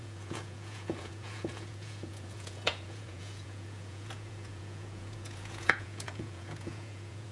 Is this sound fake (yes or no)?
yes